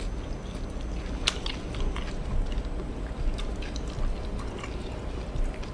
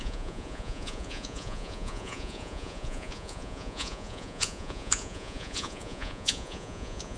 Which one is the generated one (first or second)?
second